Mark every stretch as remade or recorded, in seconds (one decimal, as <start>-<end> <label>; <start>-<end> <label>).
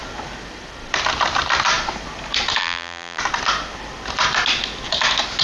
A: 0.0-2.6 recorded; 2.6-3.2 remade; 3.2-5.4 recorded